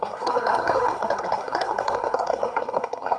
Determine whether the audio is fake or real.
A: fake